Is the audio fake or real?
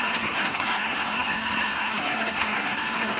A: fake